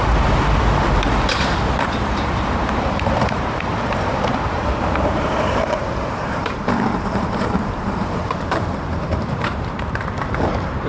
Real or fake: fake